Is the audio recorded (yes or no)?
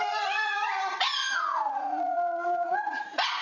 no